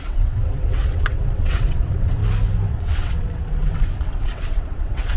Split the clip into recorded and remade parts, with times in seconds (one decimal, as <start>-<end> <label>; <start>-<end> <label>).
0.0-2.2 remade; 2.2-2.7 recorded; 2.7-5.2 remade